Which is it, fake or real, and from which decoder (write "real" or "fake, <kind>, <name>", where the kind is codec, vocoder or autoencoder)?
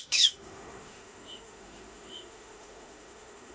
fake, autoencoder, DAC-VAE